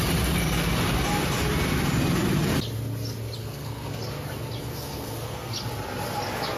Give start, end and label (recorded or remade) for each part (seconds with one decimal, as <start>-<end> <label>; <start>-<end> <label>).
0.0-3.4 recorded; 3.4-4.0 remade; 4.0-4.6 recorded; 4.6-5.5 remade; 5.5-6.6 recorded